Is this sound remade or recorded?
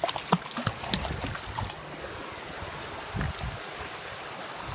recorded